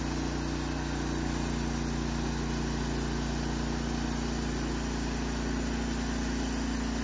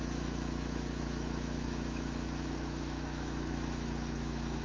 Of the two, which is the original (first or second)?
first